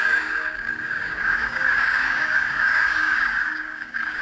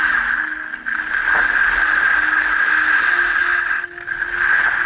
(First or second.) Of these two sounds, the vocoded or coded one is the first